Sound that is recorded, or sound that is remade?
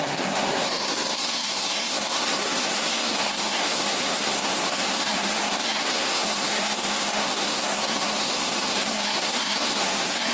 remade